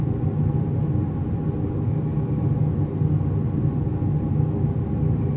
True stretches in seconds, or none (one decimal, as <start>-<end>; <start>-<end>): 0.0-5.4